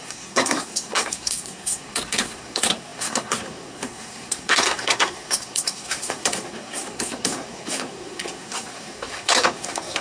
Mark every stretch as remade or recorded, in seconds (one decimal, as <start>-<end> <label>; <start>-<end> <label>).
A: 0.0-10.0 remade